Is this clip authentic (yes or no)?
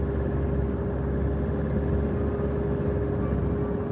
yes